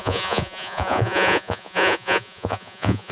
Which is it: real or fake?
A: fake